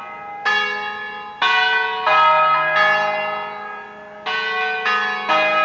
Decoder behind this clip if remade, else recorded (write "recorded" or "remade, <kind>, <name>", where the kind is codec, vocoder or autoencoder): recorded